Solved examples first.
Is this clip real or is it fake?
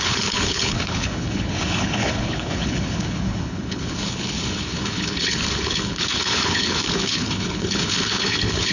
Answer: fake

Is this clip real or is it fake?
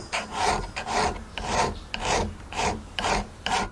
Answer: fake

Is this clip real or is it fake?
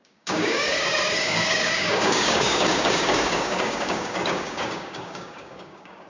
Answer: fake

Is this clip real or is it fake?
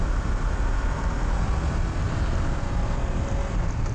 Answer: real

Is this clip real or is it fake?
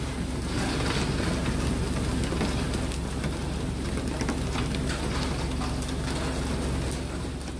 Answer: real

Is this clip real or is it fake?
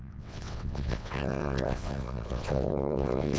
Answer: fake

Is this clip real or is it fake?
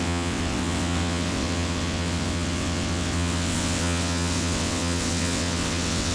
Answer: fake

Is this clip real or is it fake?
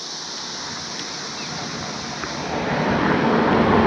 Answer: real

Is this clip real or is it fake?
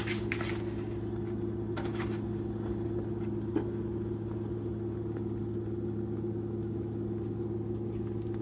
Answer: real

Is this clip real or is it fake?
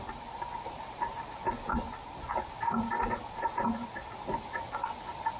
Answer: real